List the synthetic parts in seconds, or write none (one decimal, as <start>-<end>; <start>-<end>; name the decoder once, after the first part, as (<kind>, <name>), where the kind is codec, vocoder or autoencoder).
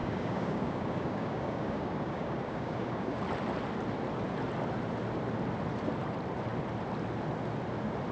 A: 0.0-3.2 (codec, DAC)